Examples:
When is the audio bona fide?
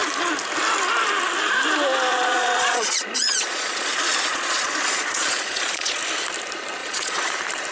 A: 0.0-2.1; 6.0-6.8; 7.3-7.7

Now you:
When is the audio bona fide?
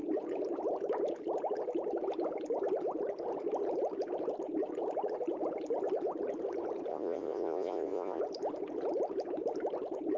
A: 0.0-6.9; 8.2-10.2